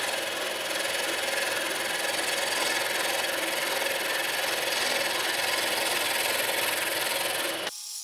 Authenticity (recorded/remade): recorded